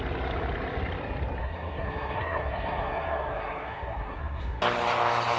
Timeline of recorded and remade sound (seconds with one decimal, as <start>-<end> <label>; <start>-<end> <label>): 0.0-1.4 recorded; 1.4-4.6 remade; 4.6-5.4 recorded